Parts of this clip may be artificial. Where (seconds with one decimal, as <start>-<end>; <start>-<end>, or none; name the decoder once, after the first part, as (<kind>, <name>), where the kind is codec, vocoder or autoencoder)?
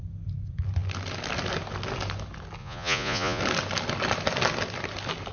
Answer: 2.6-3.4 (vocoder, Vocos)